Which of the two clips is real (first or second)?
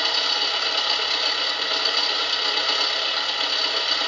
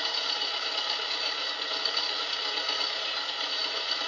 first